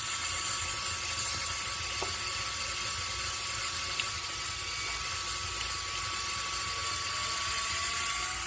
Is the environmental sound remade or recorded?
recorded